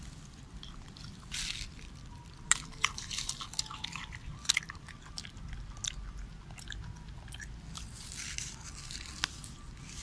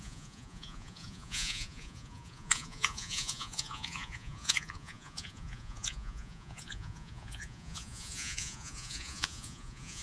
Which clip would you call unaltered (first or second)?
first